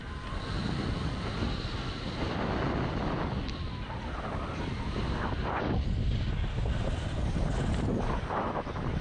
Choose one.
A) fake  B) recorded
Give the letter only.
B